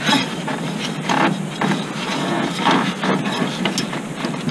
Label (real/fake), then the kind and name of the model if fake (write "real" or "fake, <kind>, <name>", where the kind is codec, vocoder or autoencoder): real